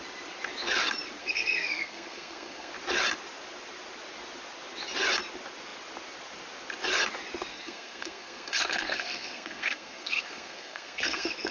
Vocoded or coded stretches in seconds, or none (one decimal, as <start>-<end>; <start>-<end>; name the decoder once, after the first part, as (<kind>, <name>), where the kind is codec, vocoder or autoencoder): 1.2-2.7 (codec, SNAC); 7.5-11.5

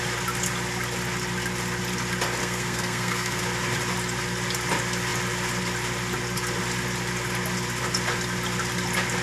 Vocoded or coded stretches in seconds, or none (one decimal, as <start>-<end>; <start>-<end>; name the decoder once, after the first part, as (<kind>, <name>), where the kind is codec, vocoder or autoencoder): 2.4-3.4 (codec, SNAC)

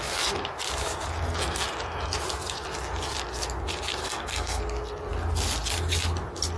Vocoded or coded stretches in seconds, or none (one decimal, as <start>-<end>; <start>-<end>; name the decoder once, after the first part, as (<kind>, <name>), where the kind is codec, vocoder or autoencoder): 4.0-4.6 (codec, SNAC)

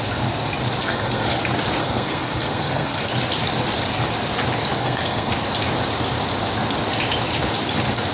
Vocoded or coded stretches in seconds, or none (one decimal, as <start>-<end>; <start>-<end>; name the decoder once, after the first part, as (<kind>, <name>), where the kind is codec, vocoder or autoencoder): 0.8-1.4 (codec, SNAC); 1.8-3.1; 4.8-5.3

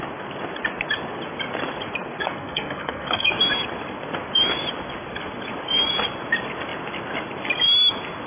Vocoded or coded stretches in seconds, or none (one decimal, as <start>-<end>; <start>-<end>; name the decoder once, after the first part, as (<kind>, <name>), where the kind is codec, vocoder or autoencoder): 2.2-3.3 (codec, SNAC)

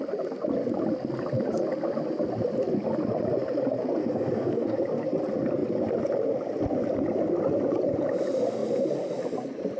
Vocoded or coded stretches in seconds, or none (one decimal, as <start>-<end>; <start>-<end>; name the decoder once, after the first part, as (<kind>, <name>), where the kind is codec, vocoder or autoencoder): 4.0-4.8 (codec, SNAC)

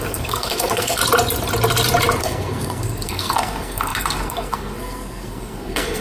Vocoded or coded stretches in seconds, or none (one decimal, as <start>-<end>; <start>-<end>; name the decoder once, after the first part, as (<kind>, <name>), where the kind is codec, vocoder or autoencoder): 0.0-1.0 (codec, SNAC); 2.2-6.0